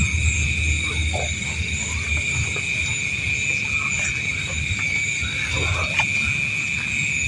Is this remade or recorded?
recorded